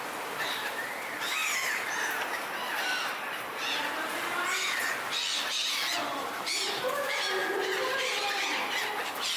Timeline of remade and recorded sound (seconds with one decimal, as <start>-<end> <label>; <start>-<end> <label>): 0.0-1.4 recorded; 1.4-2.5 remade; 2.5-6.0 recorded; 6.0-6.8 remade; 6.8-9.4 recorded